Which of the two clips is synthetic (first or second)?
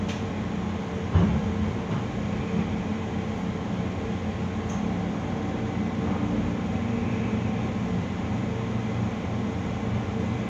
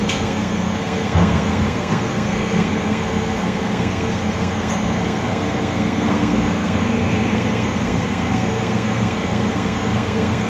second